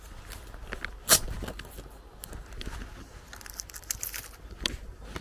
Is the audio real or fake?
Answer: real